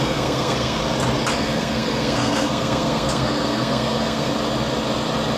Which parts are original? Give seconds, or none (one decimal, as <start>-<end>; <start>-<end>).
0.8-1.4; 4.3-5.4